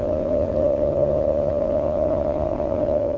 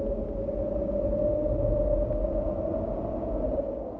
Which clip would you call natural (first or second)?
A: second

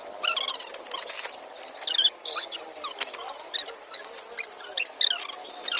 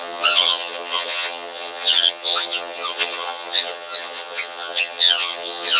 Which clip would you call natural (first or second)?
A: first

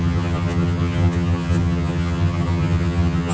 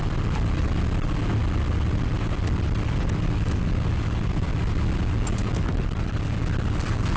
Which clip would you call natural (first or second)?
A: second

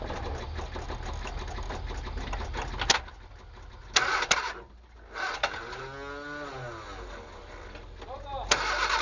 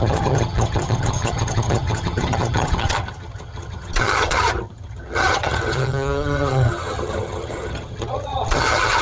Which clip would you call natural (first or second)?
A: first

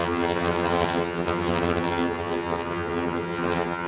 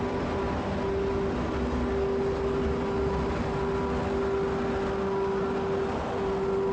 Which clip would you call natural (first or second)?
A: second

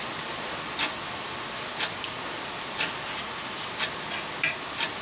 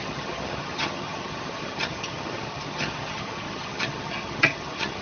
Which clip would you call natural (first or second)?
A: first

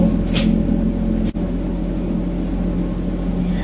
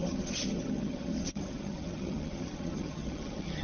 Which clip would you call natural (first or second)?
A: first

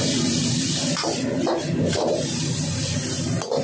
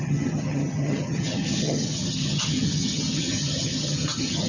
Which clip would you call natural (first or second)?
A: first